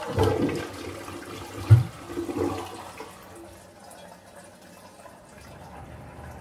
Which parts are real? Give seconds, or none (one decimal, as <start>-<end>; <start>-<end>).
0.0-3.8; 4.4-6.4